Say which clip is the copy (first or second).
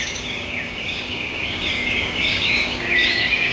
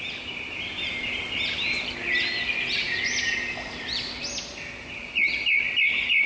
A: first